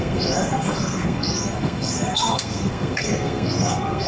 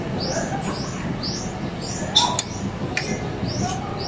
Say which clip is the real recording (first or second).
second